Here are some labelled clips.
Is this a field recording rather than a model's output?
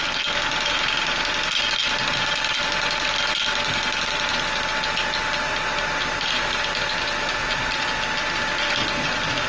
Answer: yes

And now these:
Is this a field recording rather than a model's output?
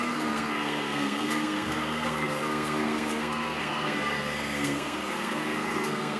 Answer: no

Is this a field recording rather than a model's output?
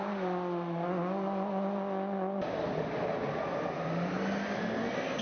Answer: yes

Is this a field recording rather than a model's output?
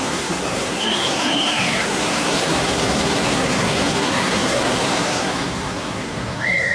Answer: no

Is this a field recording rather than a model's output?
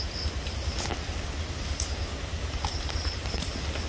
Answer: yes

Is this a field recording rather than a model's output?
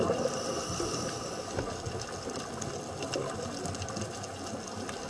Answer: yes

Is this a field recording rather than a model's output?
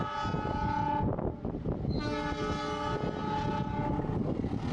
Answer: yes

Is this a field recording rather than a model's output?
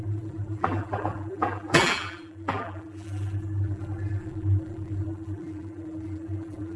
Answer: no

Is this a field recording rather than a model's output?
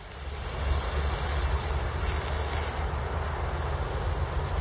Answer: yes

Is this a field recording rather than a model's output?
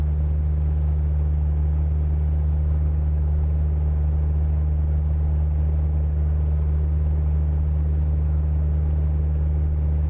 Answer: yes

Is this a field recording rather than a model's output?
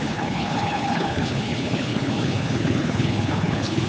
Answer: no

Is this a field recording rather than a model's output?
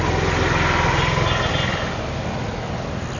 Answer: yes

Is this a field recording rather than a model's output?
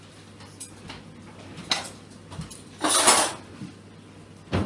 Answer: yes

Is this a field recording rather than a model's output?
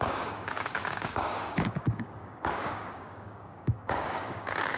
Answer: no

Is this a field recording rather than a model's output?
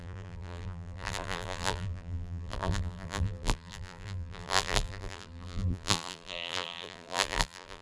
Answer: no